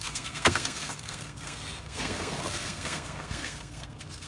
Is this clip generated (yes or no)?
yes